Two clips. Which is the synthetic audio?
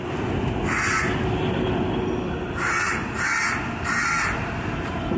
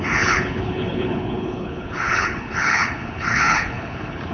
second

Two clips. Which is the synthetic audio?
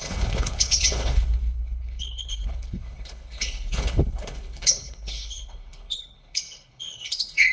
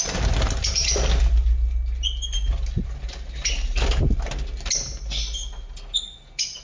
first